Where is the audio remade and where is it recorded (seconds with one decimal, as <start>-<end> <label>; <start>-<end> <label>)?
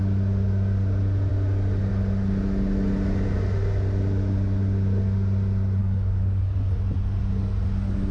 0.0-5.8 recorded; 5.8-6.7 remade; 6.7-8.1 recorded